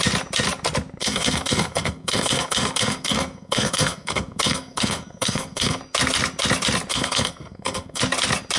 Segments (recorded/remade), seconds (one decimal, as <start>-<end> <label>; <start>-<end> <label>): 0.0-1.0 recorded; 1.0-5.8 remade; 5.8-6.9 recorded; 6.9-8.0 remade; 8.0-8.6 recorded